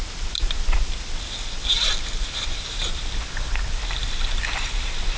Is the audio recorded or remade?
recorded